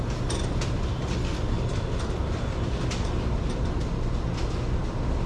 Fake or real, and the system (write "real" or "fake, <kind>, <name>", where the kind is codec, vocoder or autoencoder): real